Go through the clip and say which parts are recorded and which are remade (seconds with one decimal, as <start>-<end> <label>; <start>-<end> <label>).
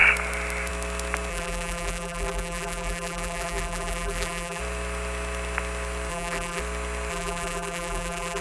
0.0-1.3 recorded; 1.3-4.6 remade; 4.6-6.1 recorded; 6.1-6.6 remade; 6.6-7.1 recorded; 7.1-8.4 remade